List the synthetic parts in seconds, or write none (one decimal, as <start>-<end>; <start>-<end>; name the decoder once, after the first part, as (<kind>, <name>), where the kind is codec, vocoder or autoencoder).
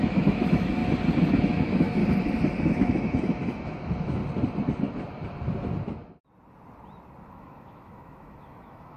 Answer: 0.0-0.8 (autoencoder, DAC-VAE); 1.4-2.0; 2.6-4.2; 7.3-9.0